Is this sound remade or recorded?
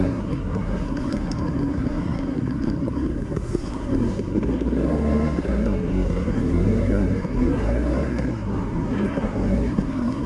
remade